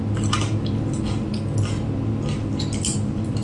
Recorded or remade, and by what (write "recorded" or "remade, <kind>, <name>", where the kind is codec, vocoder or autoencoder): recorded